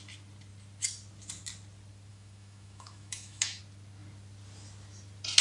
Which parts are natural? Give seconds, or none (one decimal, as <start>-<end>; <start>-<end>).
0.0-2.1; 3.6-5.4